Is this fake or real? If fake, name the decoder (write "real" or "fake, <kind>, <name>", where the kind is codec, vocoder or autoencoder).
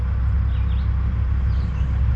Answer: real